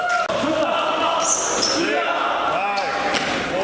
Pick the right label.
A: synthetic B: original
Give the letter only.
B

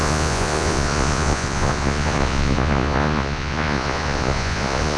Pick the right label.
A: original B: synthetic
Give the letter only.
B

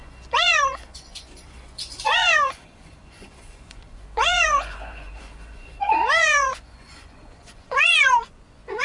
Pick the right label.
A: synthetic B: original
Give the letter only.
A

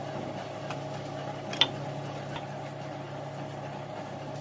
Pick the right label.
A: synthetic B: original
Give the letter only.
B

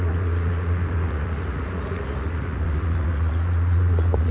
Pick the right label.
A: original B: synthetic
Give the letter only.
B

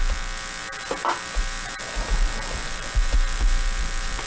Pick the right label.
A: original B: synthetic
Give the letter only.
A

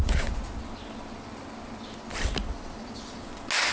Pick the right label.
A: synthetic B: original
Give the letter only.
B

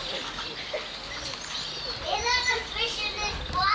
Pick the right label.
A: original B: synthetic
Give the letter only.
A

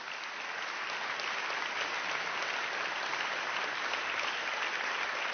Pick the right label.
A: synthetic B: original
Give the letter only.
B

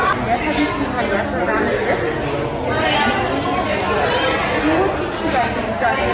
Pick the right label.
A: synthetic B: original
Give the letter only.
B